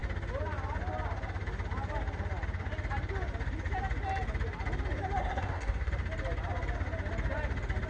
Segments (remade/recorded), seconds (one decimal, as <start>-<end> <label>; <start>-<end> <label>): 0.0-5.2 recorded; 5.2-5.9 remade; 5.9-7.9 recorded

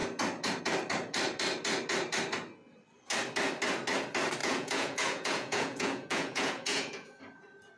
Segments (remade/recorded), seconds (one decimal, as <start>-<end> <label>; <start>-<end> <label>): 0.0-4.4 recorded; 4.4-7.2 remade; 7.2-7.8 recorded

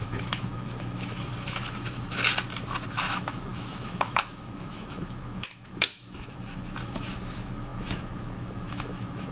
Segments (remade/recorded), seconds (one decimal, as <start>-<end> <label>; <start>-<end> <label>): 0.0-1.3 remade; 1.3-2.9 recorded; 2.9-9.3 remade

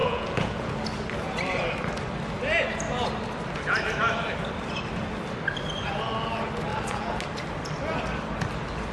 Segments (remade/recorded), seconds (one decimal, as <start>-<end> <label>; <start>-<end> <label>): 0.0-0.7 remade; 0.7-6.7 recorded; 6.7-7.2 remade; 7.2-8.9 recorded

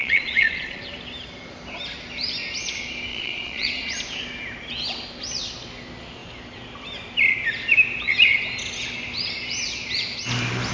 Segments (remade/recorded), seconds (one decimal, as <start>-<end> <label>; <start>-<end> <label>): 0.0-0.8 remade; 0.8-3.1 recorded; 3.1-4.0 remade; 4.0-10.7 recorded